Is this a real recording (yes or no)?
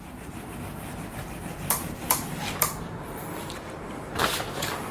no